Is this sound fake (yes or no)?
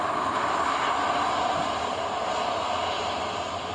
no